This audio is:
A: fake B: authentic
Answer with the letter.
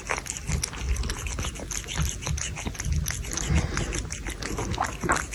B